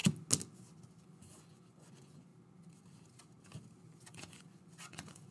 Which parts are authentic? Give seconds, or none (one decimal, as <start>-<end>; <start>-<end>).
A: 0.0-1.0; 2.3-4.1